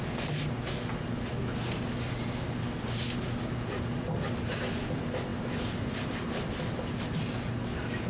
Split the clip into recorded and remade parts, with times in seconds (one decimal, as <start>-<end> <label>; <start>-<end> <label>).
0.0-8.1 recorded